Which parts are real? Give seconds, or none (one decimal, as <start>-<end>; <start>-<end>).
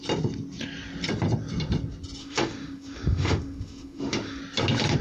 0.0-2.2; 4.4-5.0